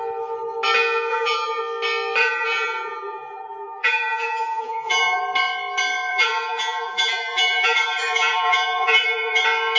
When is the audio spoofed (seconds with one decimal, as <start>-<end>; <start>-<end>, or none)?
1.1-1.6; 2.2-5.2; 6.1-9.4